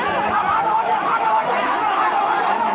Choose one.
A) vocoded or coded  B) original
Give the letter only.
B